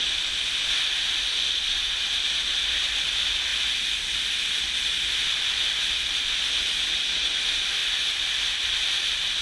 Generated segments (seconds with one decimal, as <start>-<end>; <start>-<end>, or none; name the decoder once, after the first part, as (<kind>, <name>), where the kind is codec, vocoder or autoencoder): none